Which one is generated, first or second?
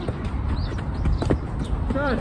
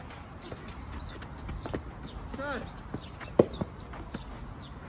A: first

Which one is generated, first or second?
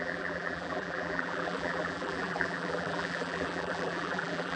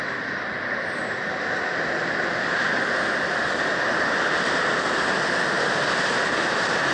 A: first